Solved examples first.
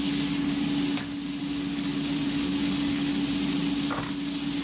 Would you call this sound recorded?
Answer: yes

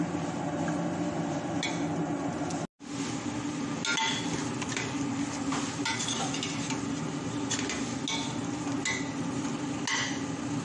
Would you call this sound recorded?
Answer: yes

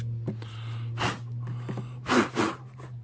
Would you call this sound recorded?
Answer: yes